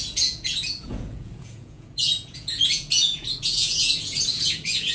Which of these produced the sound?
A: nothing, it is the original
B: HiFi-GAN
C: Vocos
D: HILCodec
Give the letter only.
C